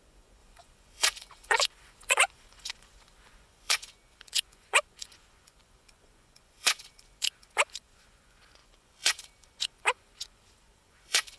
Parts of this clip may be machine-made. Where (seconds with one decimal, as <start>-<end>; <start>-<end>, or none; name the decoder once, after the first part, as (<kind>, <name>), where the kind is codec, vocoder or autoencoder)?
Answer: 0.0-11.4 (vocoder, Vocos)